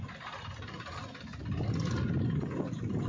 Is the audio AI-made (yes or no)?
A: yes